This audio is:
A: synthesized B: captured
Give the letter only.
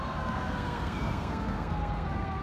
A